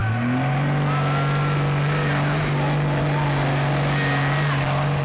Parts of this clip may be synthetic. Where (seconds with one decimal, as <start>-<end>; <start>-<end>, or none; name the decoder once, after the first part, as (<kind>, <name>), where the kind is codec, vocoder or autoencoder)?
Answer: none